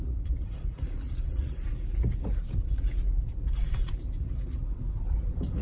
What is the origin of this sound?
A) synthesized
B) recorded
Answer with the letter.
A